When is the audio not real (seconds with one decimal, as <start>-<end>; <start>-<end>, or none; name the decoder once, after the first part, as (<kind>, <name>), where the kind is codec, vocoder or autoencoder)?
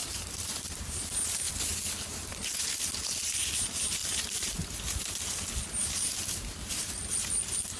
0.0-1.5 (vocoder, BigVGAN v2); 4.0-5.2; 5.8-7.8